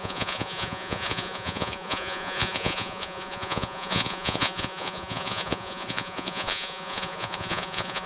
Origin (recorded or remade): remade